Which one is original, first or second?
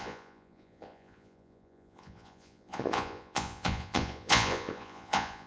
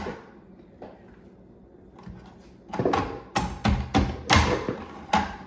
second